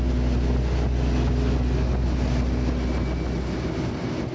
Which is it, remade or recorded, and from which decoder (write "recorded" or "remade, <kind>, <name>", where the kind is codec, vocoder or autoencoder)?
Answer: recorded